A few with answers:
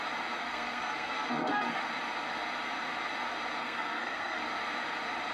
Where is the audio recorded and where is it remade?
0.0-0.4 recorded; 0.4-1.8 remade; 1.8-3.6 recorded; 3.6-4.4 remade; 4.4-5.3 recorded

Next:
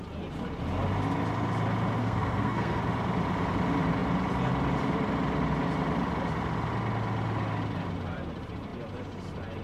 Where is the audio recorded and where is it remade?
0.0-2.0 recorded; 2.0-2.8 remade; 2.8-9.6 recorded

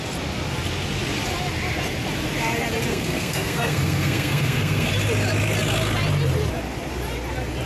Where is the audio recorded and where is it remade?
0.0-2.9 recorded; 2.9-4.9 remade; 4.9-7.7 recorded